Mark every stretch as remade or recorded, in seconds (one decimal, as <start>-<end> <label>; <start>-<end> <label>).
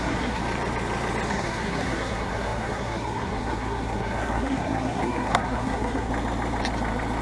0.0-0.4 remade; 0.4-1.3 recorded; 1.3-6.1 remade; 6.1-7.2 recorded